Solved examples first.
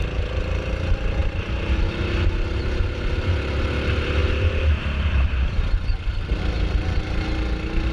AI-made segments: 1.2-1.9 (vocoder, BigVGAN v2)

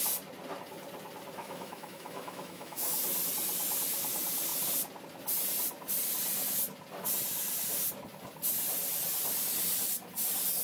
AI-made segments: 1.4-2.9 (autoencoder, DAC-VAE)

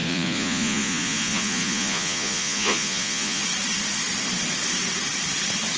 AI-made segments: 0.0-3.4 (vocoder, Vocos)